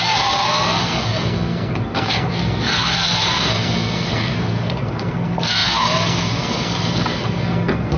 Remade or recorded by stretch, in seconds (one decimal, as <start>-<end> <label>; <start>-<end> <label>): 0.0-8.0 remade

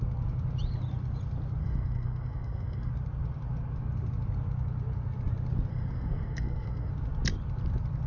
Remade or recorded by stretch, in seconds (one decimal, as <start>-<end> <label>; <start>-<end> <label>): 0.0-1.6 recorded; 1.6-2.9 remade; 2.9-5.7 recorded; 5.7-6.9 remade; 6.9-8.1 recorded

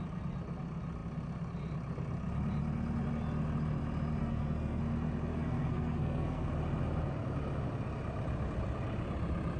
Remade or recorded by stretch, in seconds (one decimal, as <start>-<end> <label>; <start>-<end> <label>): 0.0-4.2 recorded; 4.2-4.8 remade; 4.8-5.3 recorded; 5.3-6.5 remade; 6.5-9.6 recorded

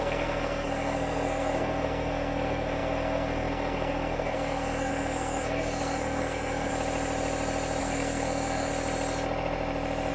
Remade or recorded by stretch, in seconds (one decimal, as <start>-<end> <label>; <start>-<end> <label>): 0.0-6.7 remade; 6.7-7.8 recorded; 7.8-8.7 remade; 8.7-10.1 recorded

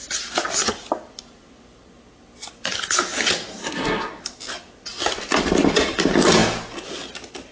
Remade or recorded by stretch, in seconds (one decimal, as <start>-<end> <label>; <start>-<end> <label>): 0.0-3.6 recorded; 3.6-4.2 remade; 4.2-7.5 recorded